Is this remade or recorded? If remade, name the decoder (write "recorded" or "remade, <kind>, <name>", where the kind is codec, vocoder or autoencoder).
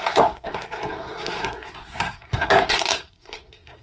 remade, codec, SNAC